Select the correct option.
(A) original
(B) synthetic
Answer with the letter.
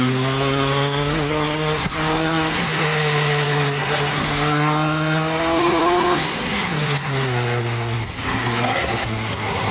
B